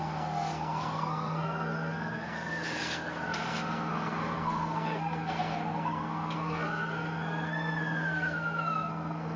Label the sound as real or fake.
fake